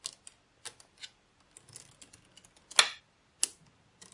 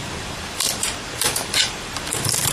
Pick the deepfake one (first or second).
second